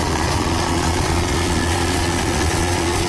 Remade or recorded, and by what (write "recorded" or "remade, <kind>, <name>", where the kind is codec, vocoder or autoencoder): remade, vocoder, Vocos